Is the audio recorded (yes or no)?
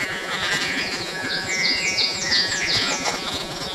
no